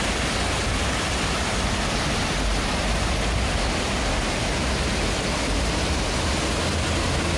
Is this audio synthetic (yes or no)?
no